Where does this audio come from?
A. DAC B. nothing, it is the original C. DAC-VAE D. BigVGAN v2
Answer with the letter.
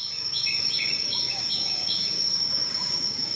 A